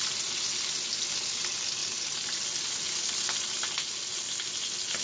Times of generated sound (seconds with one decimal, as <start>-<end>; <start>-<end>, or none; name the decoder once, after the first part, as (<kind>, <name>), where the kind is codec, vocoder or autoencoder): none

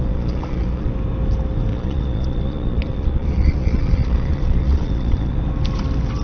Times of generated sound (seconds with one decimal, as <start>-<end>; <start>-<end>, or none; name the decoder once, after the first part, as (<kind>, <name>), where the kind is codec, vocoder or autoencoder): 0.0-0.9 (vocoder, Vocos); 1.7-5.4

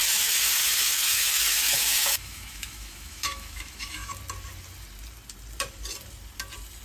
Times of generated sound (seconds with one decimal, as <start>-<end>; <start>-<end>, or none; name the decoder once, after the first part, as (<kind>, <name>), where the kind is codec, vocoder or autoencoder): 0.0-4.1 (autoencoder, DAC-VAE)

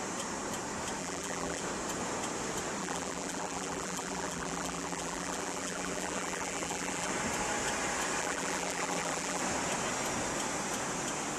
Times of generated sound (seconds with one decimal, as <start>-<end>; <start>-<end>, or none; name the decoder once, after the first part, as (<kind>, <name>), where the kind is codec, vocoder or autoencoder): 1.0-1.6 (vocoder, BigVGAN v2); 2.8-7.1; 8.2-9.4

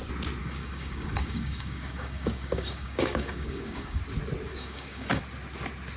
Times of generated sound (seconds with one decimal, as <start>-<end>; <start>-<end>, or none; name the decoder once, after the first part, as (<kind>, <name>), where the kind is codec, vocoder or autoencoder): 0.4-4.0 (codec, DAC); 4.5-5.2

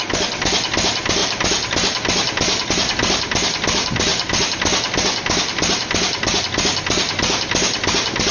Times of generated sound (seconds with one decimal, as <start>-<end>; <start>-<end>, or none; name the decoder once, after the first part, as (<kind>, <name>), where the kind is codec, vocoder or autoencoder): none

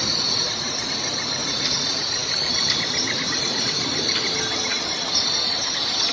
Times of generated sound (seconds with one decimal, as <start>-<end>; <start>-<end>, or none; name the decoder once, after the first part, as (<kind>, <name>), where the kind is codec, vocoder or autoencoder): none

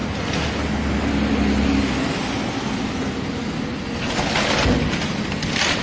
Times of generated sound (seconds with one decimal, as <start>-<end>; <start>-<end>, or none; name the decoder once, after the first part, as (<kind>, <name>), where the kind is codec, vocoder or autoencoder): none